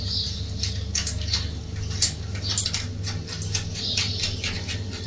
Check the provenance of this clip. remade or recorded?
recorded